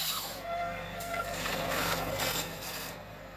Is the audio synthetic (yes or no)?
yes